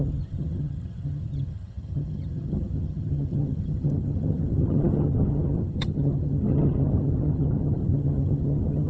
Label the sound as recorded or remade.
remade